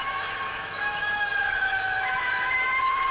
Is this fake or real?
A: fake